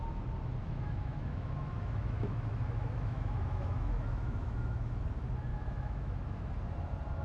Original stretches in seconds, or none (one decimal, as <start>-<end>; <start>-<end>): 0.0-0.6; 4.9-5.5; 6.5-7.2